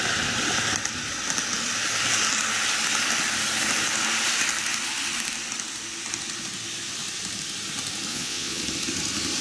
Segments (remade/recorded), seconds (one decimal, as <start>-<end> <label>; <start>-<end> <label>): 0.0-8.1 recorded; 8.1-8.6 remade; 8.6-9.4 recorded